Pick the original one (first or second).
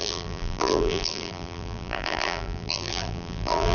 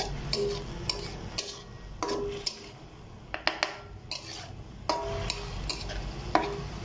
second